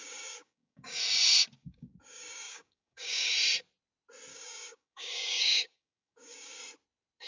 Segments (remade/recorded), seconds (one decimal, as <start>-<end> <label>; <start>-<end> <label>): 0.0-1.0 remade; 1.0-1.6 recorded; 1.6-3.3 remade; 3.3-4.3 recorded; 4.3-6.6 remade; 6.6-7.3 recorded